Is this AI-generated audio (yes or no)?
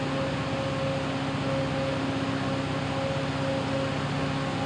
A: no